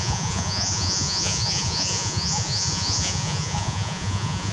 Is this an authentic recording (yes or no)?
no